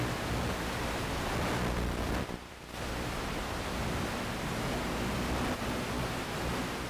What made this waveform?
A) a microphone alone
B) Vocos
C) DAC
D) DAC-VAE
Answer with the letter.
A